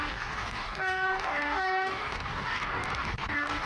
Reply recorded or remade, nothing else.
remade